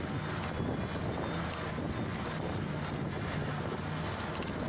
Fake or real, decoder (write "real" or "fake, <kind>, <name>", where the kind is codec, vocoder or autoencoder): real